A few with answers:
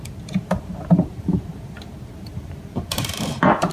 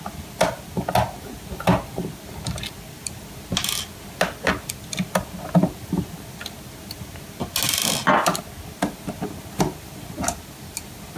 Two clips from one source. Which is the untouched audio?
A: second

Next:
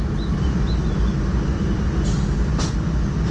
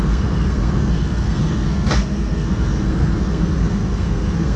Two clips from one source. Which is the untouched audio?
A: first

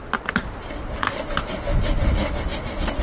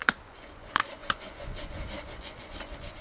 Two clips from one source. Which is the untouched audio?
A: first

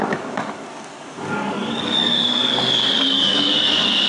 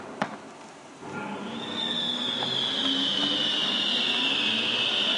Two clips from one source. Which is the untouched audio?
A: second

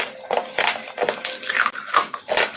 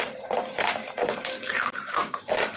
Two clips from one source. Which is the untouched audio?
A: first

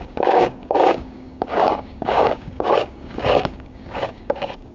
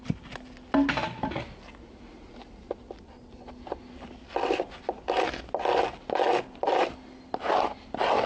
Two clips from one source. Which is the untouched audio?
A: second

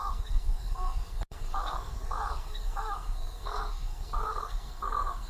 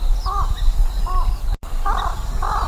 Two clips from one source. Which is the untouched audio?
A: second